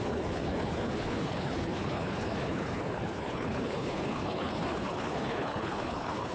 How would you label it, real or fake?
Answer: fake